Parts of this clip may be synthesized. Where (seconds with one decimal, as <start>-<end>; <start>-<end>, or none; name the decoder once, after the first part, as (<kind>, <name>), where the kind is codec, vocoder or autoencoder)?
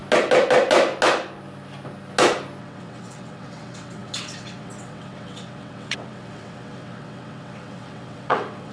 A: 2.6-8.7 (vocoder, WaveNeXt)